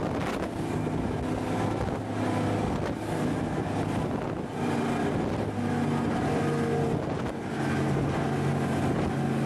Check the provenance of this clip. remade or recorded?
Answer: recorded